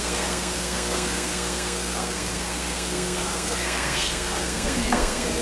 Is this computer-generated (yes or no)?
yes